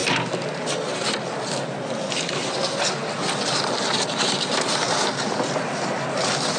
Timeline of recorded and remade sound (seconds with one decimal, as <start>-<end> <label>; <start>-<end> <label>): 0.0-6.6 recorded